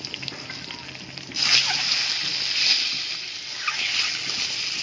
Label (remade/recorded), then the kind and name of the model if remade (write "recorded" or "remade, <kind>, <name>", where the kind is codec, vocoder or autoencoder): recorded